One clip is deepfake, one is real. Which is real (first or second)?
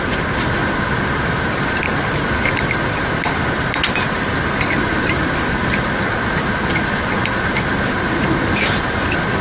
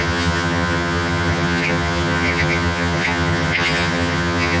first